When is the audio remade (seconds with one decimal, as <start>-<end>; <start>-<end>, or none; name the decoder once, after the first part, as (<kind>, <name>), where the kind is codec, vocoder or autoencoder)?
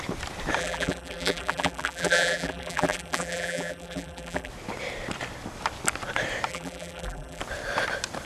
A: 0.6-4.5 (vocoder, BigVGAN v2); 6.5-7.4